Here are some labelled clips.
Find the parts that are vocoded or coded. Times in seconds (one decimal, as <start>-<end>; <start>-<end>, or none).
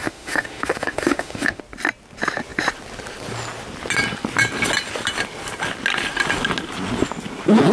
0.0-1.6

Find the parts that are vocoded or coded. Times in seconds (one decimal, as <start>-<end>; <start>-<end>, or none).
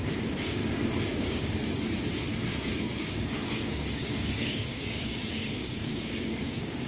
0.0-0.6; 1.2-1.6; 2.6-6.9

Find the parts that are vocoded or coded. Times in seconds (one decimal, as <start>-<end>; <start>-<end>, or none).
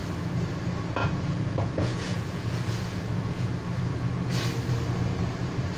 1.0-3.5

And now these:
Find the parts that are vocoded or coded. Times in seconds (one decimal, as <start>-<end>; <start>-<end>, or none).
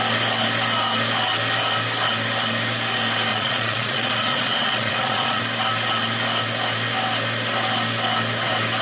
3.3-5.4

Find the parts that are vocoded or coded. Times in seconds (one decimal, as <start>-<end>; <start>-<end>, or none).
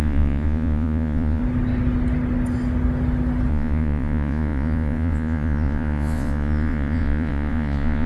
0.0-1.4; 3.5-8.1